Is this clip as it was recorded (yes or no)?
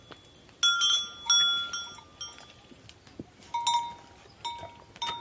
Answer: yes